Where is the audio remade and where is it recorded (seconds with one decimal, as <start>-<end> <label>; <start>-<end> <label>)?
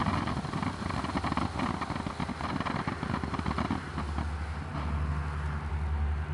0.0-6.3 recorded